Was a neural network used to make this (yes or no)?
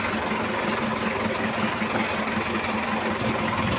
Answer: no